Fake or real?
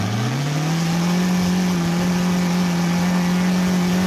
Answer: real